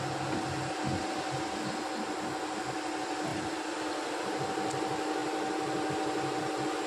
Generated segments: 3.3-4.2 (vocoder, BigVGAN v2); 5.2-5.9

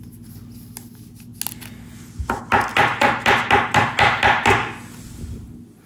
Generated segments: none

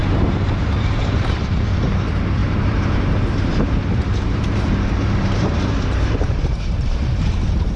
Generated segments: 0.0-7.8 (vocoder, BigVGAN v2)

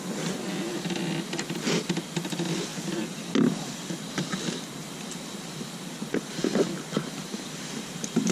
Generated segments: 0.0-8.3 (vocoder, BigVGAN v2)

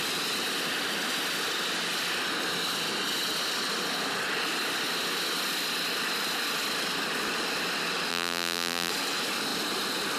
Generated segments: 8.1-8.9 (vocoder, BigVGAN v2)

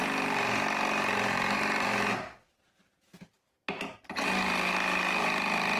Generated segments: none

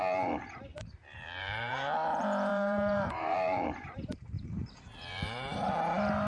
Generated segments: 0.7-1.7 (vocoder, BigVGAN v2); 2.5-6.3

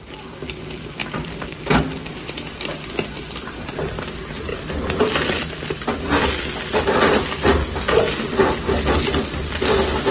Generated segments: 1.0-1.6 (vocoder, BigVGAN v2); 4.5-5.1